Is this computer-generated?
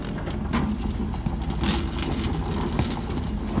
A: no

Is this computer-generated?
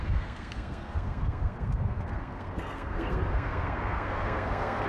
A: yes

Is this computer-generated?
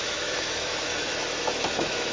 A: yes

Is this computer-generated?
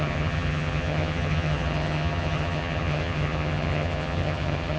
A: yes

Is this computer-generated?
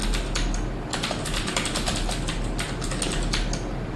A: no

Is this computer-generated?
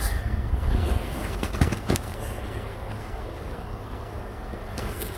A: yes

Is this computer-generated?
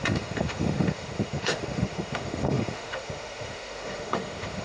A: yes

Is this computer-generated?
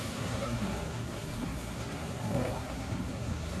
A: yes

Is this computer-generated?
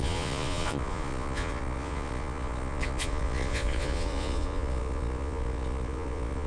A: yes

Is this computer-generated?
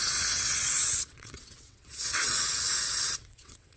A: yes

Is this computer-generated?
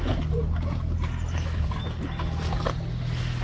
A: no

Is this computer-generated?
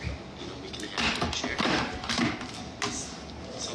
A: no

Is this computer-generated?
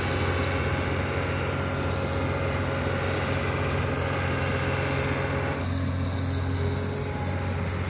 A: no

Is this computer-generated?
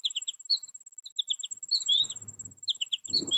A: no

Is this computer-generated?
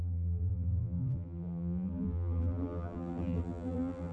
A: yes